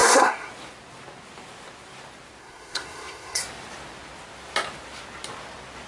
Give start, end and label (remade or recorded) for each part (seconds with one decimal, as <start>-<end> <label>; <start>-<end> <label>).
0.0-0.5 remade; 0.5-2.4 recorded; 2.4-3.4 remade; 3.4-5.9 recorded